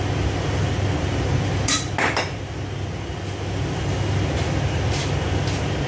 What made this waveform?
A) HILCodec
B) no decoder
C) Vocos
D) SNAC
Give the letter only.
B